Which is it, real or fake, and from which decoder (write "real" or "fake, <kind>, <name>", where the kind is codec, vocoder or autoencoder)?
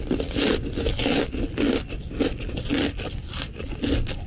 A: real